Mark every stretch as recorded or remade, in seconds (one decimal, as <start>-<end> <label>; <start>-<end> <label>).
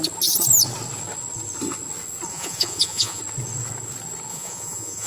0.0-2.3 recorded; 2.3-3.2 remade; 3.2-4.3 recorded; 4.3-5.1 remade